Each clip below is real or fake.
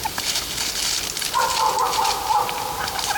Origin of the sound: real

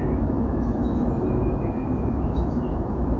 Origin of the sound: fake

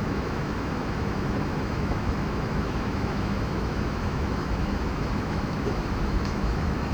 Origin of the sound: fake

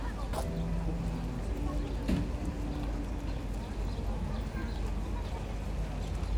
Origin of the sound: real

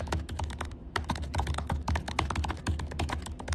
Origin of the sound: fake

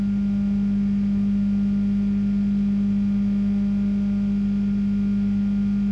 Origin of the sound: real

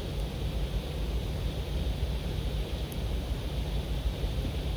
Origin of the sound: real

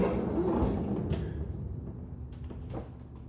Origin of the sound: real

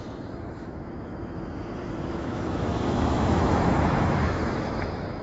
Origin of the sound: fake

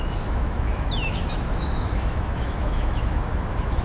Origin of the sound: fake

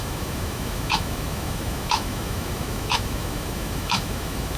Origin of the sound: fake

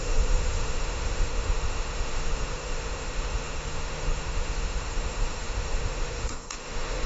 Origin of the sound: fake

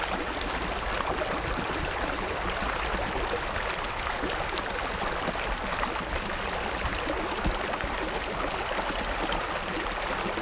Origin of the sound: real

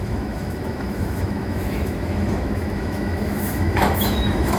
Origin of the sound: fake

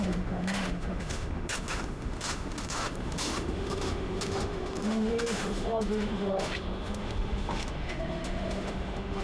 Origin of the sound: fake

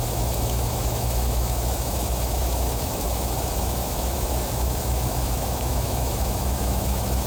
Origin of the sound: fake